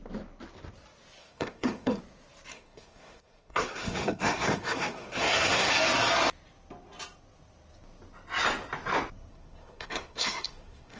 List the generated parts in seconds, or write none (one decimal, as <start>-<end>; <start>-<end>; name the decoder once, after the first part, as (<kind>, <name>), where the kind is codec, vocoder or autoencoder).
1.2-2.0 (codec, SNAC); 2.5-5.7; 9.3-11.0